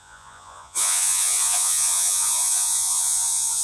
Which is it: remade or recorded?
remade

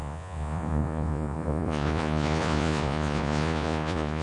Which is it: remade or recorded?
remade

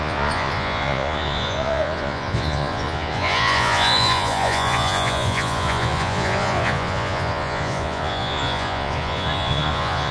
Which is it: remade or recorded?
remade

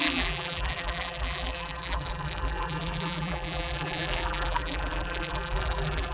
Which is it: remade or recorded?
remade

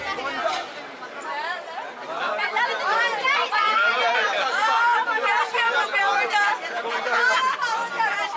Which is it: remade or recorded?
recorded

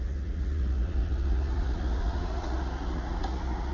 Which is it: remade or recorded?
remade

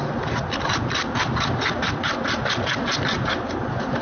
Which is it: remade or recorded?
recorded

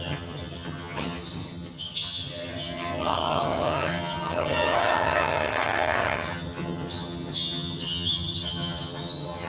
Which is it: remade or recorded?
remade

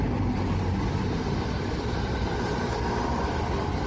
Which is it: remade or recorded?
recorded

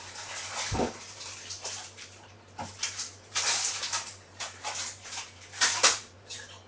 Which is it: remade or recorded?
remade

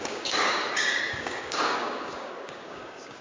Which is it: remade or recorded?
remade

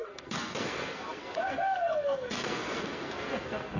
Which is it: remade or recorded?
remade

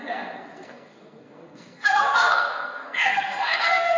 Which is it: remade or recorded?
remade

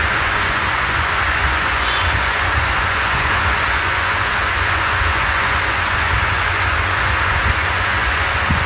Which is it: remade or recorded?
remade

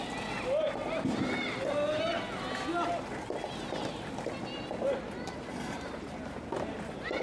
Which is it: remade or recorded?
recorded